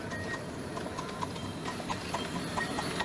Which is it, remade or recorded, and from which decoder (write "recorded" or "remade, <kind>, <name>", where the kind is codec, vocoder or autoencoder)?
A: recorded